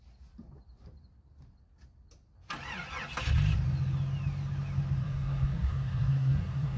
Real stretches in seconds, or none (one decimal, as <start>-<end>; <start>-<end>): 0.0-5.0